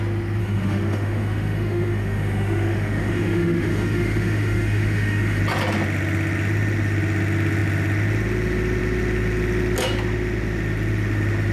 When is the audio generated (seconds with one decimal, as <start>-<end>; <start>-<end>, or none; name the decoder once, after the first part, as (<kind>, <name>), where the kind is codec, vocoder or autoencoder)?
0.4-5.4 (autoencoder, DAC-VAE)